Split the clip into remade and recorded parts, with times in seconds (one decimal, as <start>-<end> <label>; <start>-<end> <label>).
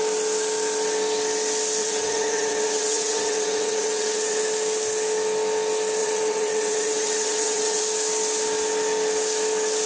0.0-1.8 recorded; 1.8-4.4 remade; 4.4-6.0 recorded; 6.0-7.8 remade; 7.8-9.9 recorded